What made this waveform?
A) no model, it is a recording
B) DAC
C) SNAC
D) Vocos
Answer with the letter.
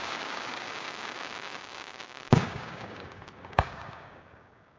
B